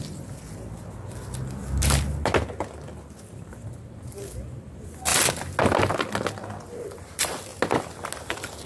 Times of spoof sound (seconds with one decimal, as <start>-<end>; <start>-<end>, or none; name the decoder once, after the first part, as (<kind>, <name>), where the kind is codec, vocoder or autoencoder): 0.0-1.6 (vocoder, BigVGAN v2); 3.5-5.1; 6.6-7.5; 8.2-8.7